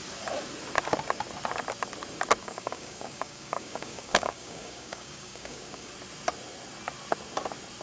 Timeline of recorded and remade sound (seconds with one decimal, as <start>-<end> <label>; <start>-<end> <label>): 0.0-2.4 recorded; 2.4-5.9 remade; 5.9-7.8 recorded